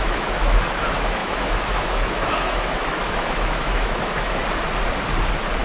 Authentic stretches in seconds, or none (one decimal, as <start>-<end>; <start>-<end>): 4.4-5.6